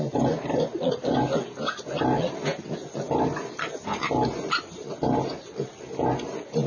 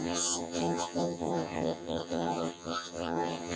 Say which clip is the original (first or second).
first